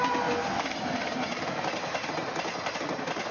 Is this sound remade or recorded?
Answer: recorded